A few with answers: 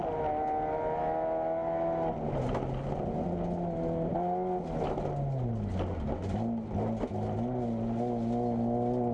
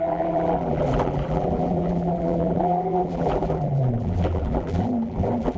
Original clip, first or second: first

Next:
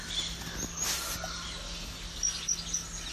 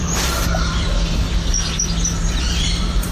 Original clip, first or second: first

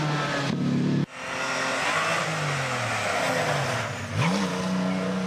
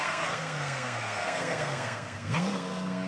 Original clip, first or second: first